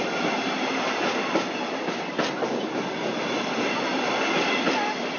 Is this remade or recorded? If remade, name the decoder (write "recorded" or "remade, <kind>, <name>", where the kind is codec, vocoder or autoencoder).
recorded